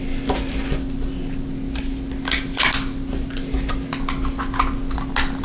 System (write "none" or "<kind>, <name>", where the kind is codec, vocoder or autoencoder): none